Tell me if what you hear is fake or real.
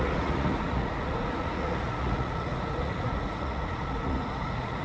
fake